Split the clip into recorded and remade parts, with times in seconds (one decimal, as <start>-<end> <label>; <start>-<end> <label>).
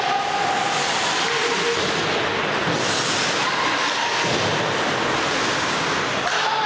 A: 0.0-5.4 recorded; 5.4-6.0 remade; 6.0-6.7 recorded